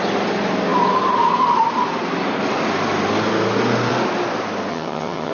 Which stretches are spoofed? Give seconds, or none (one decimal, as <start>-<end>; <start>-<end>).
4.7-5.3